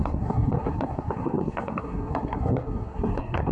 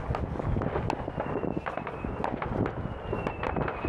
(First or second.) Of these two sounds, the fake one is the first